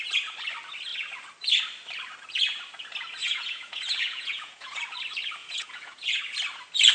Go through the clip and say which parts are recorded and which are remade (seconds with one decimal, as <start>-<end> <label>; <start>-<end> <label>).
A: 0.0-3.2 recorded; 3.2-4.8 remade; 4.8-5.4 recorded; 5.4-6.2 remade; 6.2-6.9 recorded